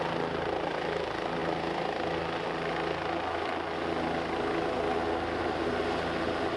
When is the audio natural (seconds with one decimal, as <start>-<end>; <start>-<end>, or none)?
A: 0.0-6.6